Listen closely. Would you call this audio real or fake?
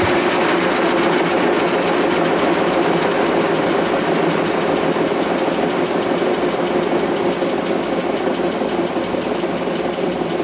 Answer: real